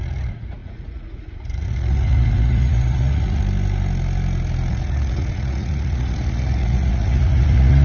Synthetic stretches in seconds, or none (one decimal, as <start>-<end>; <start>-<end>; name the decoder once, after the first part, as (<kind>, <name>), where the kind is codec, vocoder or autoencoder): 0.0-3.4 (vocoder, Vocos); 4.7-7.8